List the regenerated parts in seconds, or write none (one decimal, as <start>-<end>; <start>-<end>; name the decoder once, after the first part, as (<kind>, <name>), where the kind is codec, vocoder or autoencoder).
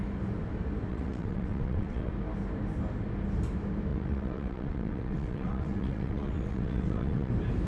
0.9-2.1 (vocoder, WaveNeXt); 3.9-7.3